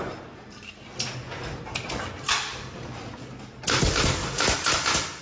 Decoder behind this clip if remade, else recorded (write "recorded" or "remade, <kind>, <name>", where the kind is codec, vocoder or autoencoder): recorded